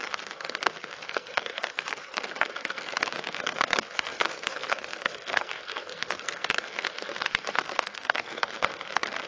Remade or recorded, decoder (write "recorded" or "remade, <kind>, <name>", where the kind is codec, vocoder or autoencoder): remade, codec, SNAC